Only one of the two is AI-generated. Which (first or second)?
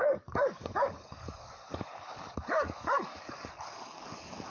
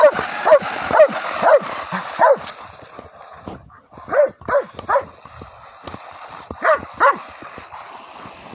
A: first